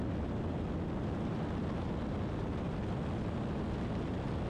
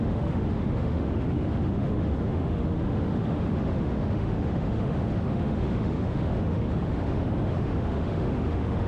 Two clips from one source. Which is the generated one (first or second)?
second